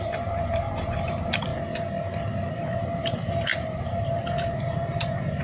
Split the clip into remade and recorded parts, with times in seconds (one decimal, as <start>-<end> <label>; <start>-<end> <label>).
0.0-1.5 remade; 1.5-2.5 recorded; 2.5-5.4 remade